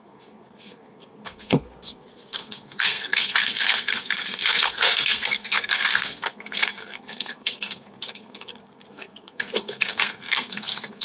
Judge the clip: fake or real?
fake